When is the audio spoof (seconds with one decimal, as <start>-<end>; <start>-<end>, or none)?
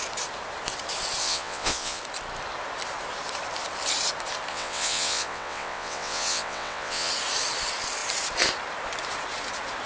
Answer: 1.2-2.0; 4.5-7.1